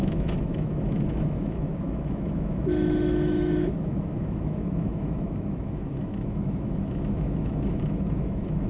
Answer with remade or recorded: remade